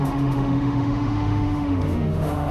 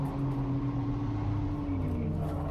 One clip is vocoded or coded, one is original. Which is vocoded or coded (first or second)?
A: first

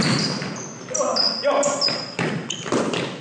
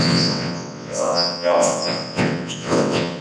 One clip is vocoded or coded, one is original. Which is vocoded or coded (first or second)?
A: second